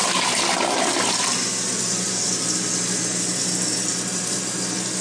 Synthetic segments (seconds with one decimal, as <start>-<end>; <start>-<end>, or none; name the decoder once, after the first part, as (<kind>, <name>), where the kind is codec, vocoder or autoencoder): none